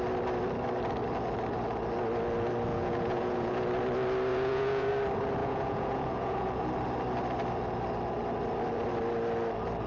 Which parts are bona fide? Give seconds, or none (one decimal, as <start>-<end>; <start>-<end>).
0.0-2.7; 3.7-4.3; 4.9-5.4; 6.6-9.9